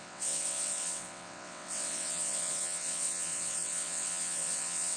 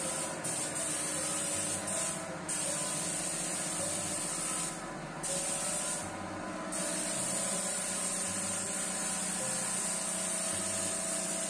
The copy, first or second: first